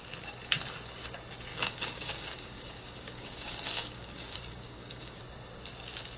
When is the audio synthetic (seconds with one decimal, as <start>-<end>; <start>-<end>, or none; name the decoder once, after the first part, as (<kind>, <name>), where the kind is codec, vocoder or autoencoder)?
1.5-5.2 (codec, DAC)